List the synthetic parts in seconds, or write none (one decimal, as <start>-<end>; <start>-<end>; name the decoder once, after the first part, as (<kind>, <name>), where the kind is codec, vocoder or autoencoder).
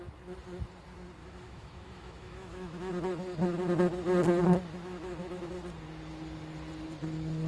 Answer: 1.2-2.9 (autoencoder, DAC-VAE); 4.8-5.5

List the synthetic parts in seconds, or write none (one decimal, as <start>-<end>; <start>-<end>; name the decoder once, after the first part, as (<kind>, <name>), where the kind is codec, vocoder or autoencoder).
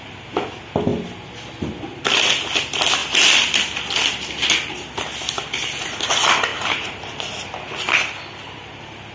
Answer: none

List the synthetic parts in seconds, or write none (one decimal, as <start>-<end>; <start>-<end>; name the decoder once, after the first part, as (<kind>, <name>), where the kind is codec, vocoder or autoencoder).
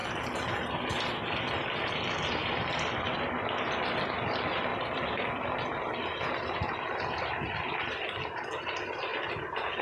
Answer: 4.7-8.2 (vocoder, BigVGAN v2)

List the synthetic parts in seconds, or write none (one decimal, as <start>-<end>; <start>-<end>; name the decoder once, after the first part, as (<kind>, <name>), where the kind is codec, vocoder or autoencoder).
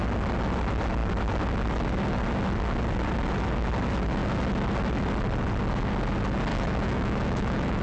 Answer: 6.5-7.8 (autoencoder, DAC-VAE)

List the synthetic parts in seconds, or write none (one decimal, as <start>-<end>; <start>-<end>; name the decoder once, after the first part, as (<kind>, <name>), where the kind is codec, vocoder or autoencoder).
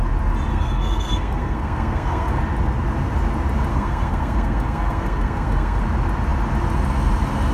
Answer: 0.5-2.4 (codec, SNAC); 3.7-5.8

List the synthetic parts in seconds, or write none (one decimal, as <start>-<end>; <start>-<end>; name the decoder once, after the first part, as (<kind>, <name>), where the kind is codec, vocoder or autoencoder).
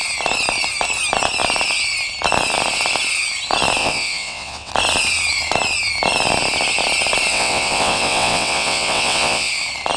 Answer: 3.8-4.7 (vocoder, WaveNeXt); 7.3-9.5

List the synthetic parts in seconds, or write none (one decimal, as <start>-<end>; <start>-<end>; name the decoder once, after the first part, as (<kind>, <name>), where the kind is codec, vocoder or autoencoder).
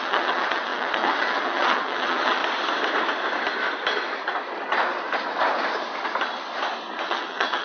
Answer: 0.0-2.4 (vocoder, WaveNeXt); 7.0-7.6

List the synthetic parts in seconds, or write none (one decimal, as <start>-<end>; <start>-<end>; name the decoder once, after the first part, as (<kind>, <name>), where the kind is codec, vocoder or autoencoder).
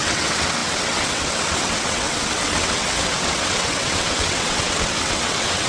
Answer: 0.0-5.7 (vocoder, WaveNeXt)